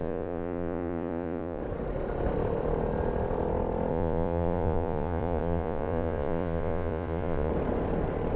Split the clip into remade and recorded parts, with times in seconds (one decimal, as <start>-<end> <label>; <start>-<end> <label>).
0.0-1.6 remade; 1.6-3.9 recorded; 3.9-7.5 remade; 7.5-8.4 recorded